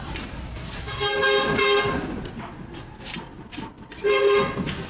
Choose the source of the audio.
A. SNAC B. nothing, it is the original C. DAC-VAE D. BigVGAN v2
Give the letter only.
B